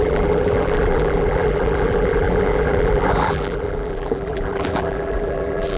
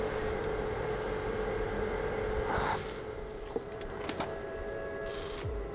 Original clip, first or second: second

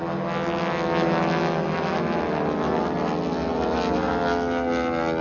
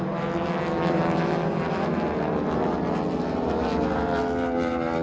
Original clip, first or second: first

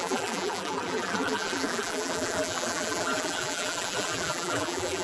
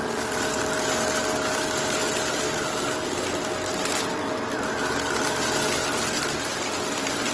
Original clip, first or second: second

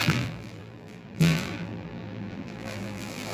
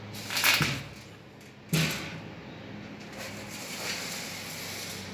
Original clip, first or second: second